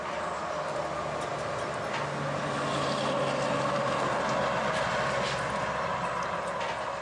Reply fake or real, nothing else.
real